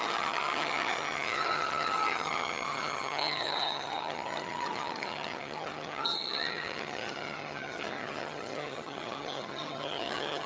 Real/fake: fake